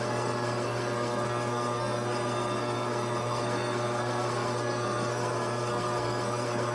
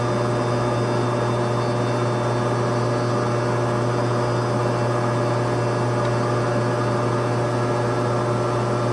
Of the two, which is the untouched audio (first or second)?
second